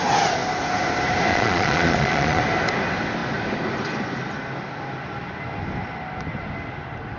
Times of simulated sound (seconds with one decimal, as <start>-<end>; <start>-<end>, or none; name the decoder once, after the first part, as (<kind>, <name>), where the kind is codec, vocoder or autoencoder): 1.3-2.4 (vocoder, Vocos)